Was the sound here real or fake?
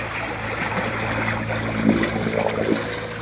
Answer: real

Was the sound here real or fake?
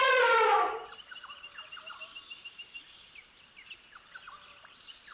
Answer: fake